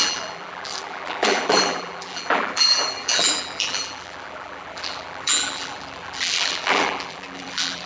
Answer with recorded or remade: remade